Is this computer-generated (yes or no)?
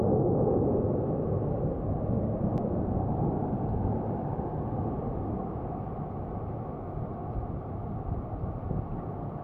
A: no